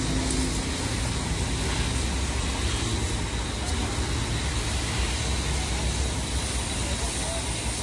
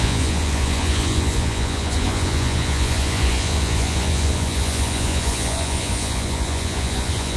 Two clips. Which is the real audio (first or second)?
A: first